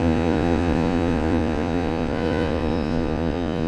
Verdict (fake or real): fake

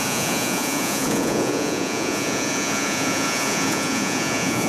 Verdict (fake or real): fake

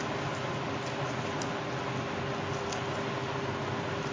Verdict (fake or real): real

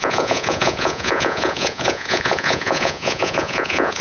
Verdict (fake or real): fake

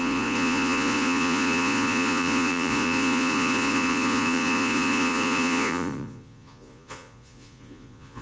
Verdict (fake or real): fake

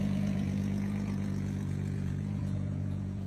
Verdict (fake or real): fake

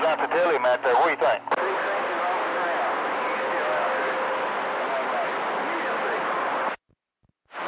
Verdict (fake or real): real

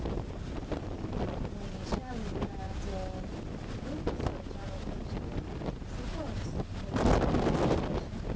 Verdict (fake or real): real